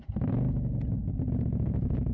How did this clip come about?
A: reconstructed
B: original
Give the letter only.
B